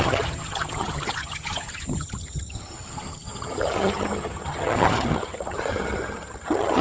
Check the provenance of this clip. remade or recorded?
remade